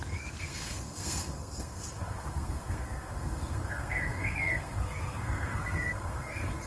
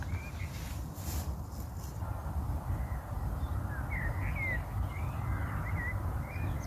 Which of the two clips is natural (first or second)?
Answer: second